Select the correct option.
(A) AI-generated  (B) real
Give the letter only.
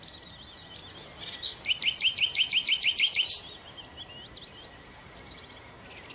B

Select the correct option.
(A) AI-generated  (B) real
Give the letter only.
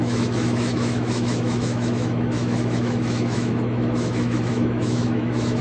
A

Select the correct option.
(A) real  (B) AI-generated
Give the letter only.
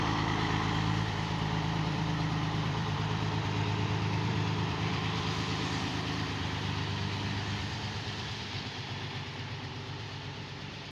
B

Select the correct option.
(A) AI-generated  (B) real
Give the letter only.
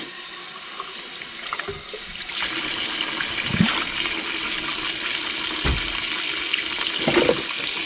B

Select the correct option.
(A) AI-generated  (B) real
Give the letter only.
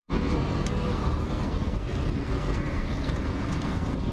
A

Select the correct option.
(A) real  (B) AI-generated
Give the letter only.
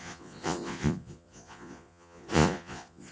B